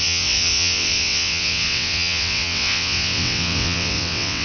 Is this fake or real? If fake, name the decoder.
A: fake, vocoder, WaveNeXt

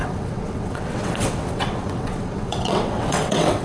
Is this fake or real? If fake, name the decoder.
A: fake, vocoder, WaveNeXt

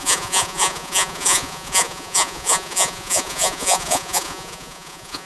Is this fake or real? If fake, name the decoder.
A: fake, vocoder, Vocos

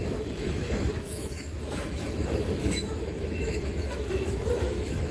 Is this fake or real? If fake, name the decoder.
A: fake, autoencoder, DAC-VAE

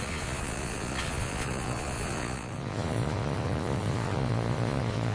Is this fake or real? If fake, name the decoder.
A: fake, vocoder, Vocos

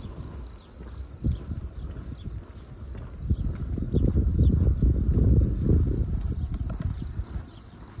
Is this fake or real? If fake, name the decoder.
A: real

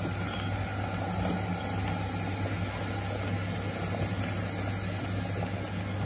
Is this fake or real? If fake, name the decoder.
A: real